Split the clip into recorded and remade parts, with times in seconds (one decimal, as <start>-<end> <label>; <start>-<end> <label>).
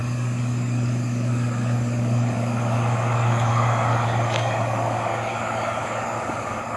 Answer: 0.0-6.8 remade